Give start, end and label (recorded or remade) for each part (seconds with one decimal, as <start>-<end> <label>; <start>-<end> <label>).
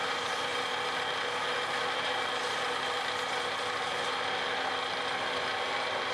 0.0-6.1 recorded